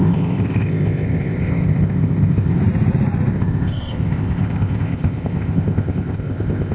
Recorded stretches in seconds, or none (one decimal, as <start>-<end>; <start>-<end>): 2.6-3.3